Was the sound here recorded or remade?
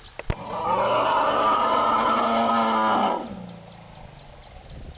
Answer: recorded